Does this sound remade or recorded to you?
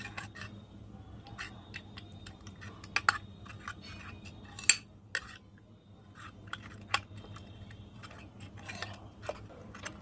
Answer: recorded